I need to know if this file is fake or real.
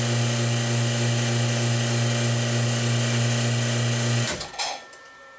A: real